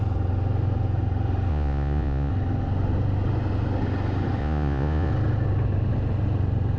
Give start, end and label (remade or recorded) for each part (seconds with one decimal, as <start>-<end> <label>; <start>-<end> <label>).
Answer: 0.0-1.5 recorded; 1.5-2.3 remade; 2.3-4.4 recorded; 4.4-5.1 remade; 5.1-6.8 recorded